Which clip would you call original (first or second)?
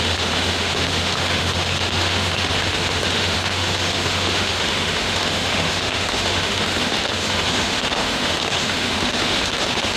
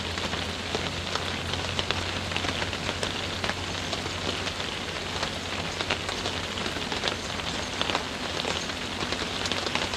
second